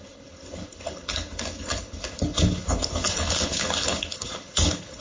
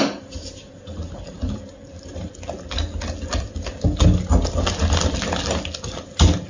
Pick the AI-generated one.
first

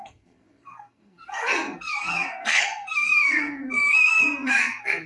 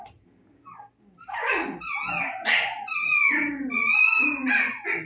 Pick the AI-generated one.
first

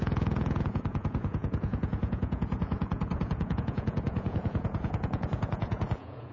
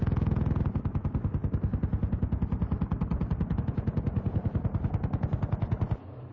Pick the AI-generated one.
first